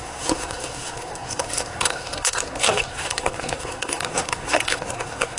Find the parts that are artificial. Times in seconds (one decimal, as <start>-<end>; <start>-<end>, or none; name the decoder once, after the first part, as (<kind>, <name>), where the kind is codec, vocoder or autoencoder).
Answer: 0.0-5.4 (codec, SNAC)